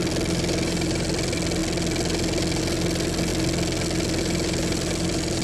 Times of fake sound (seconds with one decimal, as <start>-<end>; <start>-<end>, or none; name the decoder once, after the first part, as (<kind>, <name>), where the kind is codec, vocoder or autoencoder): 0.0-1.6 (vocoder, BigVGAN v2); 2.6-3.3; 4.2-5.4